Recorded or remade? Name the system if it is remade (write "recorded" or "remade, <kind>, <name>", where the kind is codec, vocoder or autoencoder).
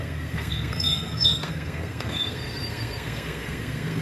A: remade, codec, SNAC